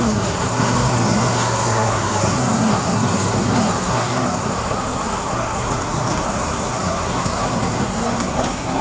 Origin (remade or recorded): remade